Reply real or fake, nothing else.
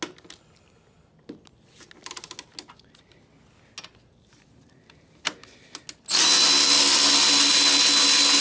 real